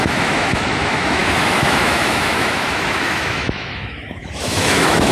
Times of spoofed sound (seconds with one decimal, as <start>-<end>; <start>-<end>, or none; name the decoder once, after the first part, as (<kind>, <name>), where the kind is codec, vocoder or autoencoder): 0.0-5.1 (autoencoder, DAC-VAE)